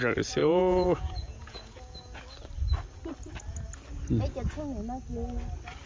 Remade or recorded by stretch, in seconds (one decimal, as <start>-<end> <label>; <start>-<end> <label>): 0.0-0.4 recorded; 0.4-2.2 remade; 2.2-5.9 recorded